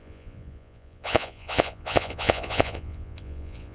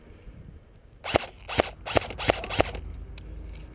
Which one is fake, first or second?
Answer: first